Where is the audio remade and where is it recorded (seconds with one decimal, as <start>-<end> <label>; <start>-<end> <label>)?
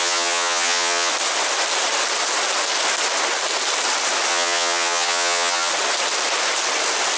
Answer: 0.0-1.1 remade; 1.1-4.3 recorded; 4.3-5.7 remade; 5.7-7.2 recorded